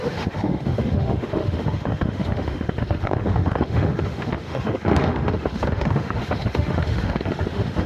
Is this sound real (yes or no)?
no